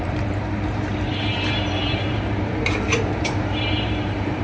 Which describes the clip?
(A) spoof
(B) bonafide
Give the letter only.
A